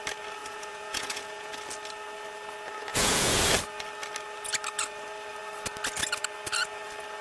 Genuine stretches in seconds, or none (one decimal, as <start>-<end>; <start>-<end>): 0.0-0.4; 1.5-2.9; 3.5-7.2